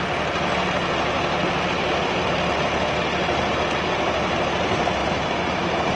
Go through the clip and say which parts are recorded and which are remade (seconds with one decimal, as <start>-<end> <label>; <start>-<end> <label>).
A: 0.0-5.0 recorded; 5.0-6.0 remade